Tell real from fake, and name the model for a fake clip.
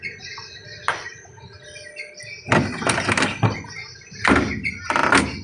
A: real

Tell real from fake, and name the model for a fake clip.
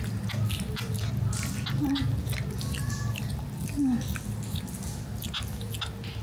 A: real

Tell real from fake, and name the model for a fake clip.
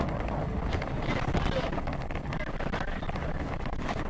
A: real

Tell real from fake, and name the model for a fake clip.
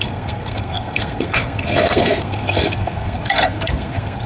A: fake, codec, SNAC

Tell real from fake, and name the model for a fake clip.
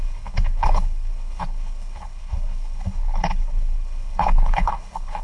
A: fake, codec, HILCodec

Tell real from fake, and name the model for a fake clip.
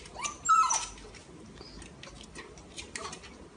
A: real